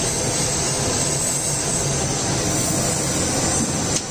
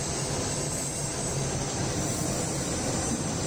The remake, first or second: second